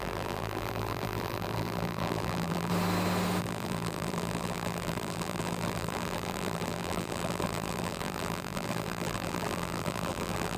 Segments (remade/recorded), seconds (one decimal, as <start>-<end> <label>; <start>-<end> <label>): 0.0-2.7 remade; 2.7-3.4 recorded; 3.4-10.6 remade

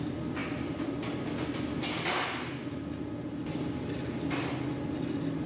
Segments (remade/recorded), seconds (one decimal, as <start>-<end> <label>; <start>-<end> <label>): 0.0-5.5 recorded

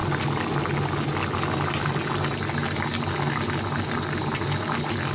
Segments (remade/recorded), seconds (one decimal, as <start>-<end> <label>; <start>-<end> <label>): 0.0-5.1 recorded

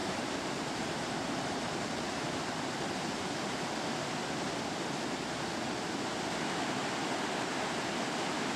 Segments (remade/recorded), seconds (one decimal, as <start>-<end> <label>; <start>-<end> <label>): 0.0-0.9 remade; 0.9-8.6 recorded

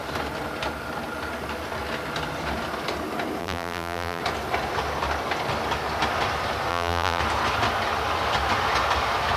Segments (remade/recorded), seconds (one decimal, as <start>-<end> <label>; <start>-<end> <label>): 0.0-3.4 recorded; 3.4-4.2 remade; 4.2-6.7 recorded; 6.7-7.2 remade; 7.2-9.4 recorded